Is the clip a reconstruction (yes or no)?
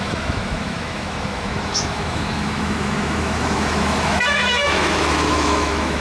yes